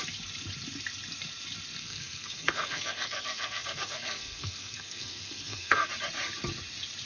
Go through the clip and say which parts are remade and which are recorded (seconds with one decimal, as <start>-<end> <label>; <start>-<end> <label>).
0.0-1.8 recorded; 1.8-5.9 remade; 5.9-7.1 recorded